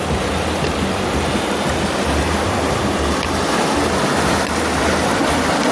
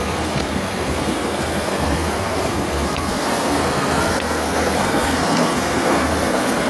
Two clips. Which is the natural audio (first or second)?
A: first